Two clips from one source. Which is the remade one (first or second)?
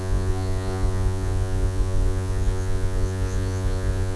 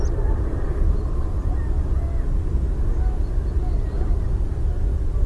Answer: first